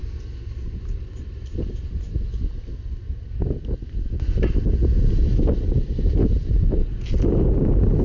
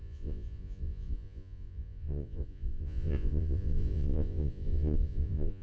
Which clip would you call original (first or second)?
first